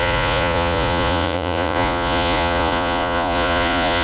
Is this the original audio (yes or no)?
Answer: no